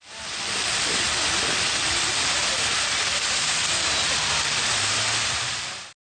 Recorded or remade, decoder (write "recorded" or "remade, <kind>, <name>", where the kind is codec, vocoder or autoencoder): recorded